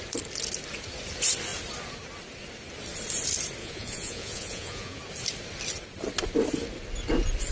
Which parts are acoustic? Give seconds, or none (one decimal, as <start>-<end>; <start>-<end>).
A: 0.0-3.6; 5.0-7.5